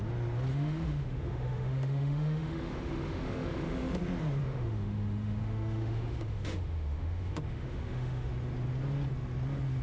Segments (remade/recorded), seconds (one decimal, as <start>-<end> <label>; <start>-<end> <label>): 0.0-0.5 recorded; 0.5-4.0 remade; 4.0-4.4 recorded; 4.4-8.3 remade; 8.3-9.8 recorded